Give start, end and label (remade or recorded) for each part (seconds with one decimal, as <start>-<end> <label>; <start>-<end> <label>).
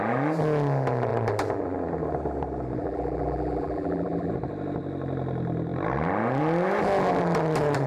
0.0-2.8 recorded; 2.8-4.3 remade; 4.3-7.9 recorded